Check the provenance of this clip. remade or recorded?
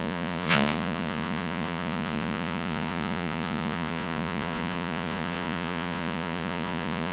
remade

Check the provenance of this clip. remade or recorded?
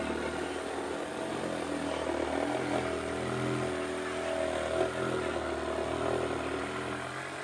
recorded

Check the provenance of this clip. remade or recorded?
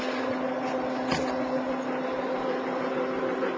recorded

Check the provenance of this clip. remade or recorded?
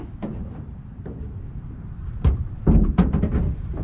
remade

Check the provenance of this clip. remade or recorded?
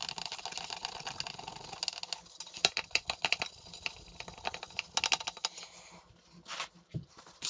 recorded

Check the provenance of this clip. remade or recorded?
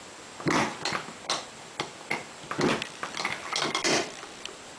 recorded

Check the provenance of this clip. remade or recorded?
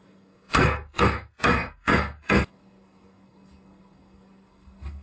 remade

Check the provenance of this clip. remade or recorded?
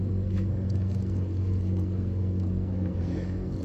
remade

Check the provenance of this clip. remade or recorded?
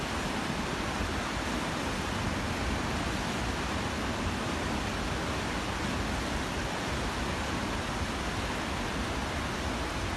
recorded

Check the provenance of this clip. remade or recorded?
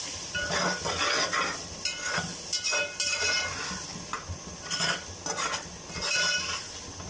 recorded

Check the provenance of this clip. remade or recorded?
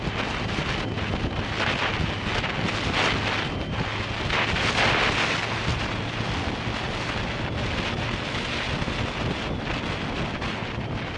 recorded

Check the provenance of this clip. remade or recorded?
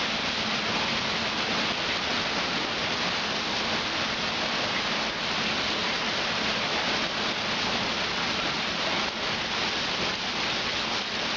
recorded